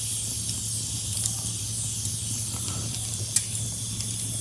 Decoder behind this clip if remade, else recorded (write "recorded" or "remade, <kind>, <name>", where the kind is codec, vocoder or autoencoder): recorded